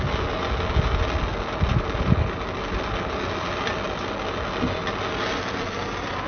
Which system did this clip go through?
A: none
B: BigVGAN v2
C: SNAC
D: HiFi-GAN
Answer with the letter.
A